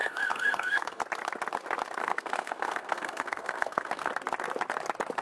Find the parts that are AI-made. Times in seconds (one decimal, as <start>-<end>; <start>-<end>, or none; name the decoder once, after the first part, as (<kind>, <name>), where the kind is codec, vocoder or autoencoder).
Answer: 0.0-1.0 (codec, SNAC); 2.0-4.1